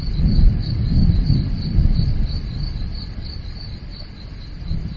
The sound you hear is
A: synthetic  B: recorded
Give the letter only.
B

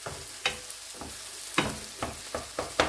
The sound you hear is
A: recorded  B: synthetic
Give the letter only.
A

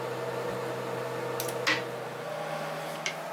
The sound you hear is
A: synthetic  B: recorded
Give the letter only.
B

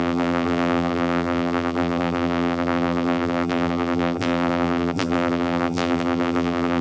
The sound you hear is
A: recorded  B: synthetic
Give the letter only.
B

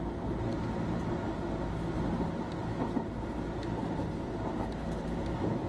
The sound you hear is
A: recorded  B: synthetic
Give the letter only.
A